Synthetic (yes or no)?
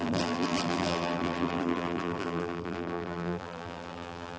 yes